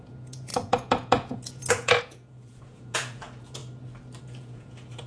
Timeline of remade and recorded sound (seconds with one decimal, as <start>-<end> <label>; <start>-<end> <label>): 0.0-3.6 remade; 3.6-4.2 recorded; 4.2-5.1 remade